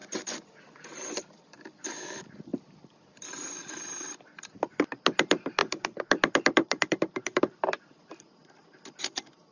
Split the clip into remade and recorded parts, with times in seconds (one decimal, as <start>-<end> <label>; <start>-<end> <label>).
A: 0.0-0.6 recorded; 0.6-9.5 remade